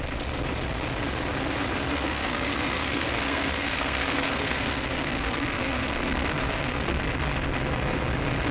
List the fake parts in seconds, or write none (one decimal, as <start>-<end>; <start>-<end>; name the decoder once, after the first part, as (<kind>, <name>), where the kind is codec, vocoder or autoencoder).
1.9-7.0 (codec, SNAC)